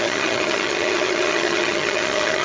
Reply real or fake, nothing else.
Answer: fake